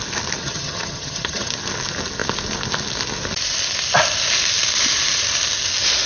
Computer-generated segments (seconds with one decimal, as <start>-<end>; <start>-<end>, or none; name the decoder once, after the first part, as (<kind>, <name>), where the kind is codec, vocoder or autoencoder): 0.4-1.5 (vocoder, HiFi-GAN)